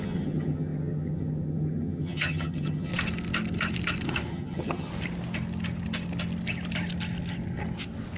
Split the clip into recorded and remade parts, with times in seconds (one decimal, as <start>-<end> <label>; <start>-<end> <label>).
0.0-2.9 remade; 2.9-4.3 recorded; 4.3-4.9 remade; 4.9-8.2 recorded